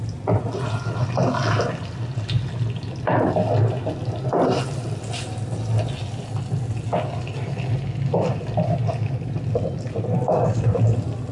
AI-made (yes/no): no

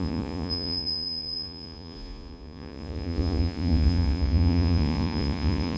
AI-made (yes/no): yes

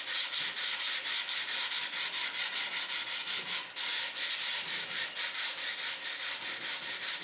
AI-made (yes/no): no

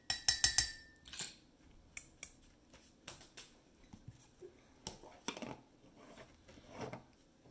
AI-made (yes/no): no